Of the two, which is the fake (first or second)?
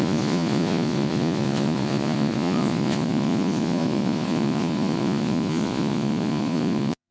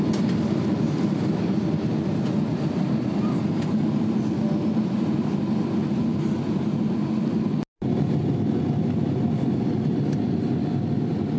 first